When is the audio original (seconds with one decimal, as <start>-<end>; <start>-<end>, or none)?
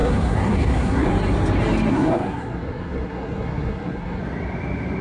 1.1-1.9; 4.2-5.0